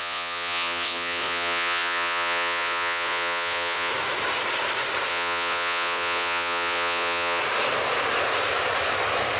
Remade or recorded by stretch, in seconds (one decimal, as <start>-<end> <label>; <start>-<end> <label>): 0.0-3.9 remade; 3.9-5.1 recorded; 5.1-7.4 remade; 7.4-9.4 recorded

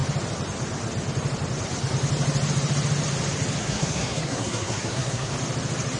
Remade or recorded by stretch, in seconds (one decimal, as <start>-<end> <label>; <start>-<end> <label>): 0.0-3.6 recorded; 3.6-5.3 remade; 5.3-6.0 recorded

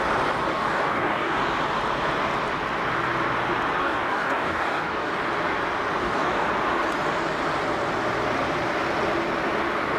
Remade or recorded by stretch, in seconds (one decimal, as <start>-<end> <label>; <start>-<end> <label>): 0.0-0.5 recorded; 0.5-1.4 remade; 1.4-3.8 recorded; 3.8-5.1 remade; 5.1-6.0 recorded; 6.0-6.5 remade; 6.5-10.0 recorded

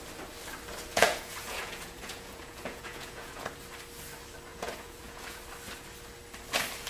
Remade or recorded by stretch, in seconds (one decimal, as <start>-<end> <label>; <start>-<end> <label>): 0.0-0.9 recorded; 0.9-3.5 remade; 3.5-4.5 recorded; 4.5-5.4 remade; 5.4-6.9 recorded

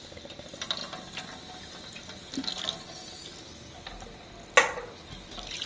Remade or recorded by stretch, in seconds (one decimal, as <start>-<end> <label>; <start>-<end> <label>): 0.0-5.7 recorded

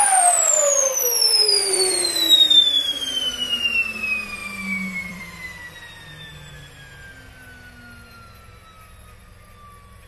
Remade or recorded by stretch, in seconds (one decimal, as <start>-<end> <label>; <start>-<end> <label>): 0.0-1.4 recorded; 1.4-3.1 remade; 3.1-4.4 recorded; 4.4-5.6 remade; 5.6-10.1 recorded

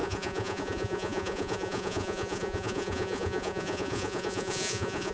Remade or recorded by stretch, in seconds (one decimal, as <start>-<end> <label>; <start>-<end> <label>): 0.0-5.1 remade

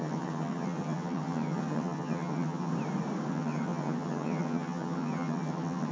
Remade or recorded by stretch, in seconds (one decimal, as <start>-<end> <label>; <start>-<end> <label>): 0.0-2.7 remade; 2.7-3.3 recorded; 3.3-5.9 remade